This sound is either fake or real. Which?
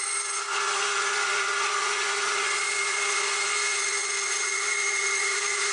fake